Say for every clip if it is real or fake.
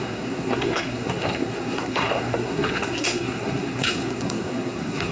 fake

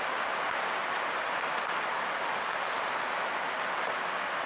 real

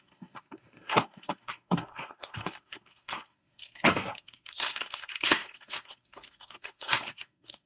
fake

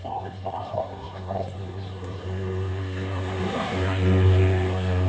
fake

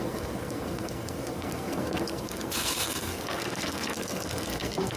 fake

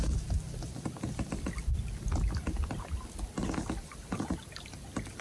real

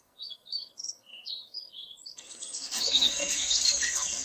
fake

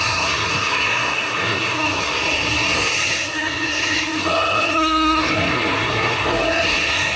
fake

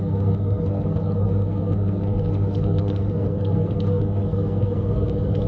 fake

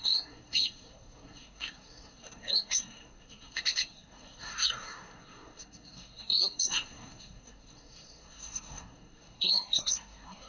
fake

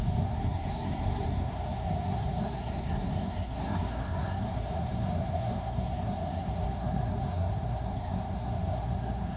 fake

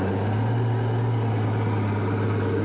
real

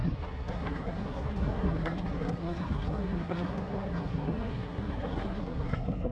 fake